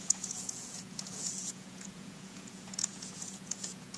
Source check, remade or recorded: remade